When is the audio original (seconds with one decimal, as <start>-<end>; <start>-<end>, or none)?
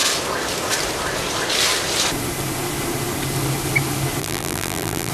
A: 0.0-4.2